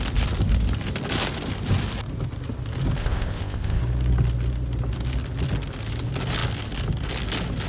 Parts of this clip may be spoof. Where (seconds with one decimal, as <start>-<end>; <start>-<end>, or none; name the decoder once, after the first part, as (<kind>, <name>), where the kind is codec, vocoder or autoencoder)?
3.0-3.8 (codec, ZipCodec)